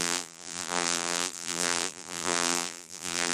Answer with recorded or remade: remade